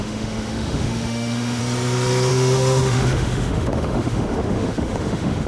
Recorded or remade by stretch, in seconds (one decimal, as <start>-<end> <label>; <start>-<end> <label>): 0.0-1.6 remade; 1.6-2.3 recorded; 2.3-5.5 remade